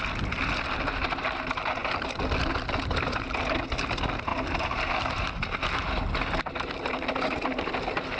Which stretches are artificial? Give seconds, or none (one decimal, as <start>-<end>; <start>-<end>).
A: none

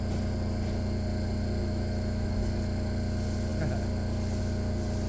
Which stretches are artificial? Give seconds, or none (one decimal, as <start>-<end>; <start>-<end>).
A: 1.6-2.5

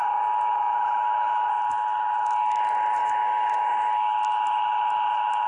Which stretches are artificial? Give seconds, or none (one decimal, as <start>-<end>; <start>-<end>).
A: 0.6-1.5; 3.0-3.7

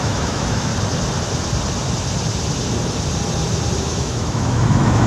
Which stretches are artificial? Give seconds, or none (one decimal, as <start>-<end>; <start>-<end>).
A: 0.0-0.7; 3.8-5.1

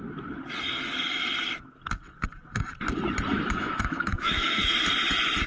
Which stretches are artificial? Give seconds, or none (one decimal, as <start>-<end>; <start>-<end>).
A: 3.3-4.7

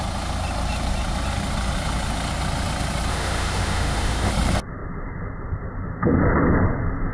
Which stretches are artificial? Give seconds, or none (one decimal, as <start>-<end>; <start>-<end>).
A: 3.1-4.3

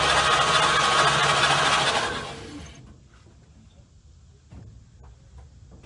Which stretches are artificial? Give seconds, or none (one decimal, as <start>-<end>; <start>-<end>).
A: none

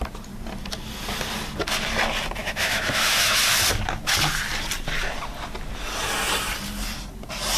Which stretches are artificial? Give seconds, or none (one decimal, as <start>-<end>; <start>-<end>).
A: 2.4-3.4